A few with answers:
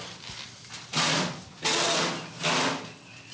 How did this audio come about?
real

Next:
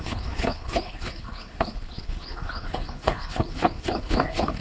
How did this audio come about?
fake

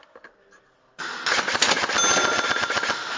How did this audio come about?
real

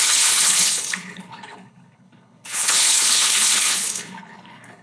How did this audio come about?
fake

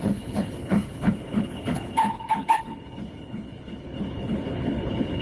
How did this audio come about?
fake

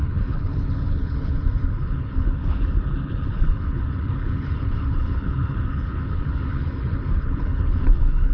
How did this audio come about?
fake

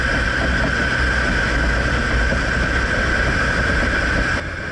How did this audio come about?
real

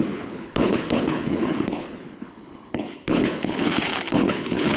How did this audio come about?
fake